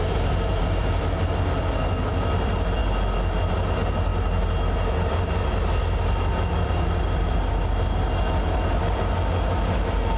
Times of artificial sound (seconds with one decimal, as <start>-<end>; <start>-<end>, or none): none